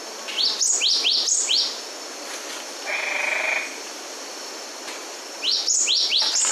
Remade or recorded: recorded